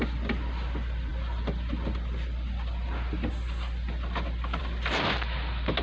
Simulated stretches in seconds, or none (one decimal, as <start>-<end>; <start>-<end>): none